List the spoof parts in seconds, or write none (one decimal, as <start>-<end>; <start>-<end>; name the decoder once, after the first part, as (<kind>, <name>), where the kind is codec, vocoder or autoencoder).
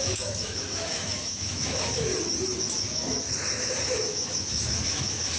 0.0-2.1 (autoencoder, DAC-VAE); 2.6-5.4